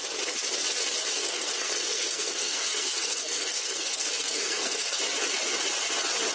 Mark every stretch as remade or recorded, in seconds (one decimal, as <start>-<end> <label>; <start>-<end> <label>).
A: 0.0-1.2 recorded; 1.2-5.0 remade; 5.0-6.3 recorded